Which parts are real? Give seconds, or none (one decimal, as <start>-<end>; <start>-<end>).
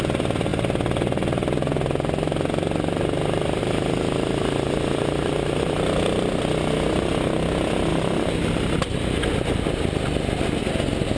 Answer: 0.0-11.2